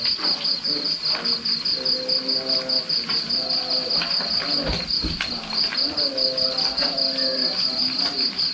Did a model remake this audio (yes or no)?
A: no